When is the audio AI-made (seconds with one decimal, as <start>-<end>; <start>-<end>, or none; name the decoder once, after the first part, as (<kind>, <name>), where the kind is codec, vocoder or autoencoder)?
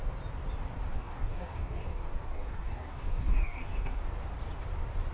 0.9-4.0 (codec, DAC)